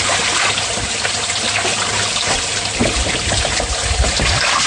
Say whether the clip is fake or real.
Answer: real